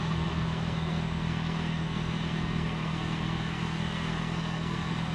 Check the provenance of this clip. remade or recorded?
remade